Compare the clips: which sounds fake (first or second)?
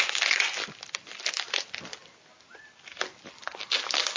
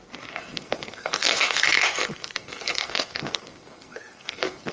second